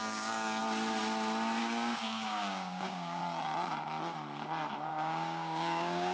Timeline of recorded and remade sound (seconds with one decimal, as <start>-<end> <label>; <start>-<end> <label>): 0.0-0.6 remade; 0.6-1.6 recorded; 1.6-3.2 remade; 3.2-4.9 recorded; 4.9-6.1 remade